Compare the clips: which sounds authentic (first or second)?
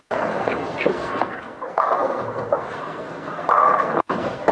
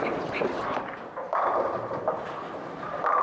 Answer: second